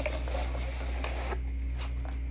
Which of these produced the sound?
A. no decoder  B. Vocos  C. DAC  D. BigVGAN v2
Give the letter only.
A